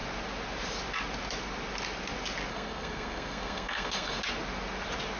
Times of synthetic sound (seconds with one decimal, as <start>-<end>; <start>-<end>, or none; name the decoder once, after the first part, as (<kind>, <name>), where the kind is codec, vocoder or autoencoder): 2.5-4.2 (codec, SNAC)